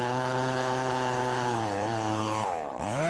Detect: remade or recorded remade